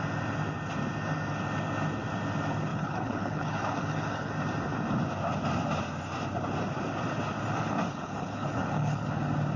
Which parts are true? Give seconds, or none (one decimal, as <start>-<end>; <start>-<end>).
0.0-2.7; 4.3-7.9; 9.1-9.6